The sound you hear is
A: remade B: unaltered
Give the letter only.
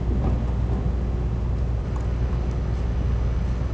B